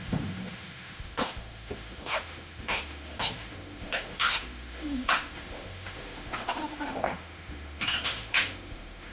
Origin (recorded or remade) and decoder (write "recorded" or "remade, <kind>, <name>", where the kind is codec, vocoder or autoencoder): remade, autoencoder, DAC-VAE